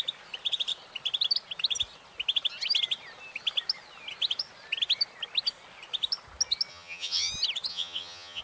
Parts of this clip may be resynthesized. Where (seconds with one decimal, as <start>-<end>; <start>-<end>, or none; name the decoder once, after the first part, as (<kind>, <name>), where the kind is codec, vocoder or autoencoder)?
6.7-7.3 (vocoder, HiFi-GAN); 7.7-8.4